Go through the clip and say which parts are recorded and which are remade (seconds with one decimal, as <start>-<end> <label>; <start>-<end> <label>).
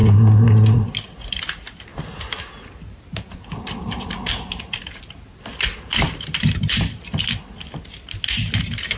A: 0.0-9.0 recorded